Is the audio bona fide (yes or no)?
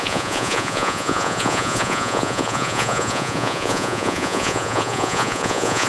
no